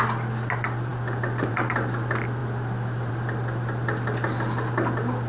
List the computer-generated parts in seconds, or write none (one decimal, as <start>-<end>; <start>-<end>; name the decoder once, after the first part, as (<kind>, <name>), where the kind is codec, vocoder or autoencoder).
none